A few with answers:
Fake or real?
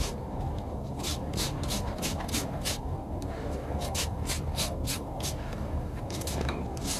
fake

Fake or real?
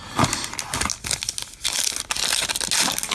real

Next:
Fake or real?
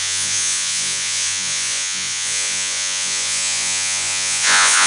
fake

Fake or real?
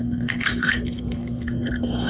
fake